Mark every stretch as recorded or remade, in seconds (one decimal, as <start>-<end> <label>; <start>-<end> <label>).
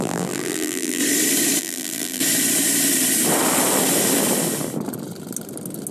0.0-1.0 remade; 1.0-1.6 recorded; 1.6-2.2 remade; 2.2-5.9 recorded